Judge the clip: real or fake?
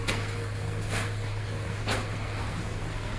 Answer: fake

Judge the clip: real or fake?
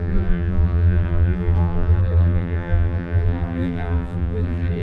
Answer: fake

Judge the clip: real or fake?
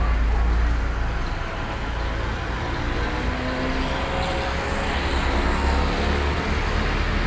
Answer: real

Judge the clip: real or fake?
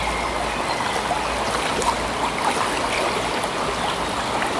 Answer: real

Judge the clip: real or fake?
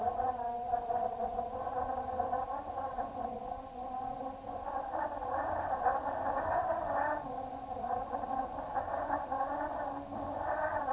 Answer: real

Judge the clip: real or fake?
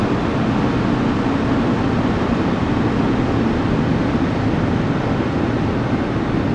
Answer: real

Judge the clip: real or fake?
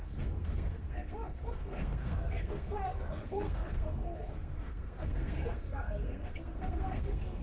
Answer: fake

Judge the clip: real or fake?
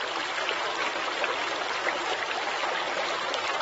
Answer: real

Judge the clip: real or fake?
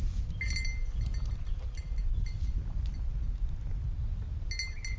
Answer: real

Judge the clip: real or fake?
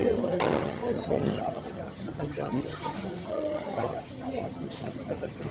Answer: fake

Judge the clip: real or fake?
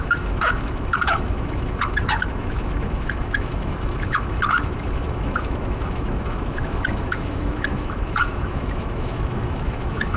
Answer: fake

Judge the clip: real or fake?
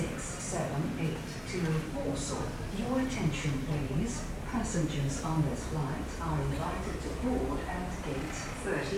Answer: real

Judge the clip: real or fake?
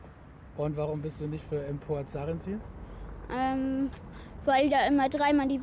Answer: real